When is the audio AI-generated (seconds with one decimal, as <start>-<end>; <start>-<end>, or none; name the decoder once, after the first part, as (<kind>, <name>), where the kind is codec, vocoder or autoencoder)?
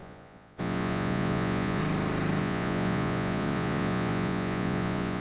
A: 0.0-1.8 (vocoder, Vocos); 2.4-5.2